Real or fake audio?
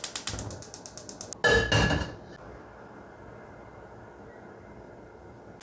real